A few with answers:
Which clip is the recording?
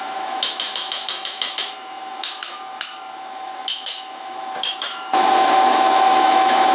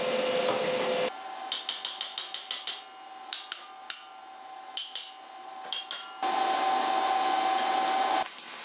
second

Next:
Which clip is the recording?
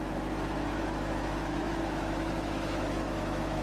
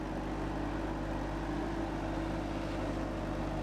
second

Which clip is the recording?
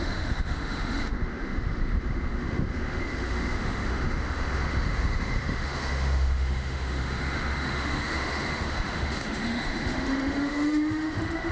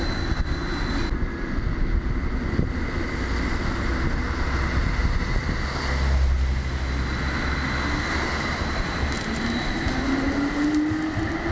second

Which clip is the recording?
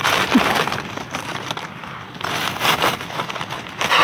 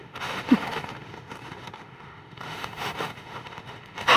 first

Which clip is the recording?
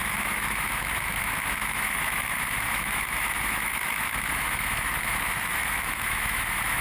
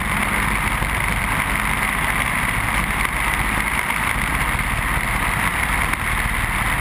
second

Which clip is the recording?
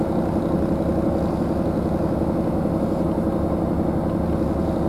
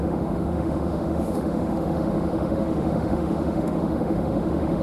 first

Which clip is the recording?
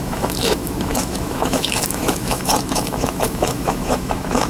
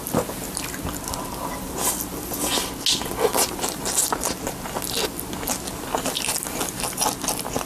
second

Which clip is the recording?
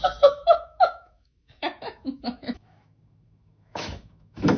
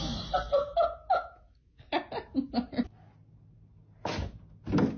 second